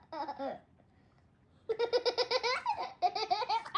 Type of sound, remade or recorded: recorded